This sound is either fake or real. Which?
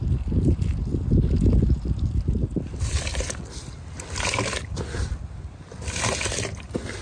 real